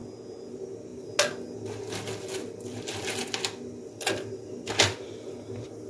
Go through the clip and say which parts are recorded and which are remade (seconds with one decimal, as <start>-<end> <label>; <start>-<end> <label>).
0.0-5.9 recorded